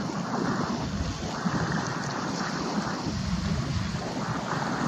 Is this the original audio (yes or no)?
yes